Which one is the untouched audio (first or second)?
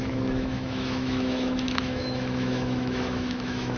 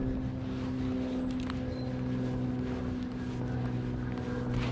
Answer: second